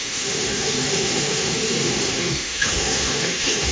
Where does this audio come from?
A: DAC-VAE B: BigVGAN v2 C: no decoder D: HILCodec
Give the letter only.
A